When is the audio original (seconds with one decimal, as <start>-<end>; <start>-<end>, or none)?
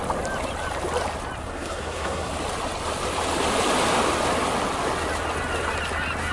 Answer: 0.0-1.4; 2.3-6.3